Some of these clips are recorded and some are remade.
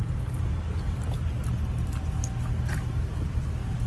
recorded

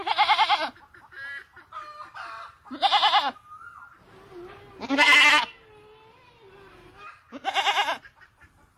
recorded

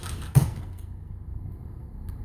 remade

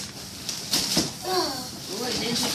recorded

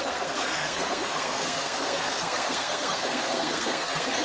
remade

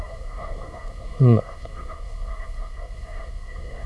remade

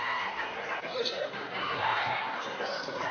remade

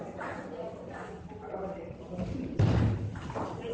recorded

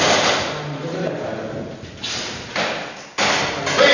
recorded